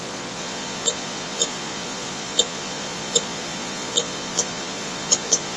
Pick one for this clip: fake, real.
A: fake